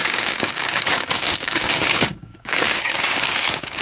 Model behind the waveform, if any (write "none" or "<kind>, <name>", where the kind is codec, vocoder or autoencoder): codec, DAC